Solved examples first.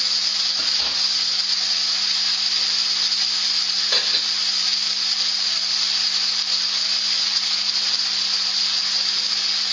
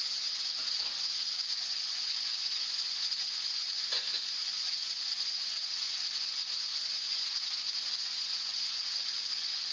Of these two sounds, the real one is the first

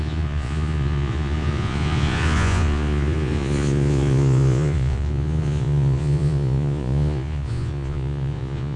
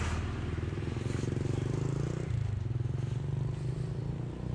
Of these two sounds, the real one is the second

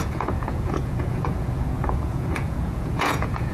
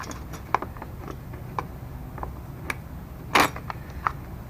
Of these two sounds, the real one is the second